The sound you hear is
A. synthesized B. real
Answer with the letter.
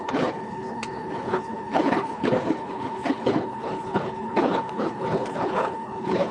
A